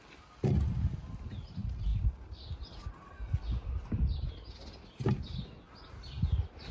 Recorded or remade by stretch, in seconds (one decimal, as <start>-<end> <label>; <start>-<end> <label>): 0.0-6.7 recorded